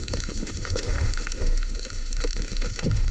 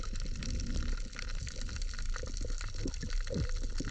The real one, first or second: second